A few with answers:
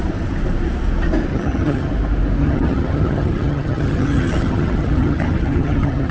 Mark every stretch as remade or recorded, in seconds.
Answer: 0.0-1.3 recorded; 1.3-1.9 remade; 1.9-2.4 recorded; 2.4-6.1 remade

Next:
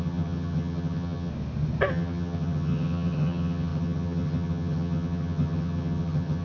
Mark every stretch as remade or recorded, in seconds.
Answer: 0.0-1.3 remade; 1.3-1.9 recorded; 1.9-6.4 remade